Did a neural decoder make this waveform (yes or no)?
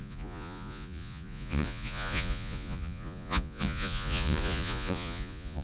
yes